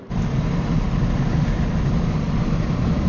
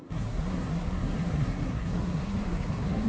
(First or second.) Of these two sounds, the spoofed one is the second